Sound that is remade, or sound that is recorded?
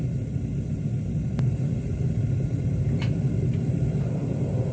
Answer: remade